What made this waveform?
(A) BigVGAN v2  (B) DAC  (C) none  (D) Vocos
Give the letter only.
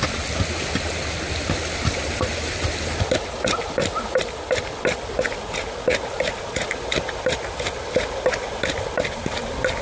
C